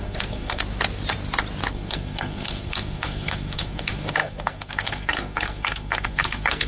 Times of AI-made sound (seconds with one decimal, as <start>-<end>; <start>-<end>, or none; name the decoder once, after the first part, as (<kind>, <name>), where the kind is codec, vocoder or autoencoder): 0.0-0.6 (codec, SNAC); 1.7-6.7